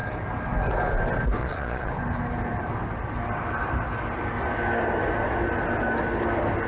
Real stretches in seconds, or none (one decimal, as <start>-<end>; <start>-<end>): 0.0-1.4; 1.9-6.7